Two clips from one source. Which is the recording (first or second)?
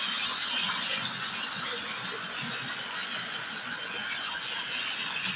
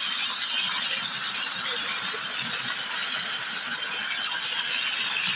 second